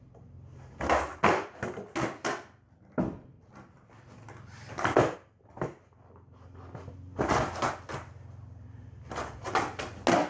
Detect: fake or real real